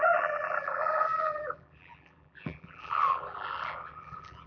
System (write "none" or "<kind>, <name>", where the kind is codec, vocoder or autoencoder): vocoder, BigVGAN v2